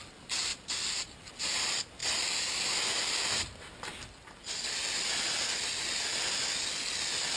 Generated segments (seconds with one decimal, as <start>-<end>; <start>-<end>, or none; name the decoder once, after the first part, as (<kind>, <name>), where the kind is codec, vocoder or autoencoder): 0.5-1.3 (vocoder, BigVGAN v2); 2.0-4.0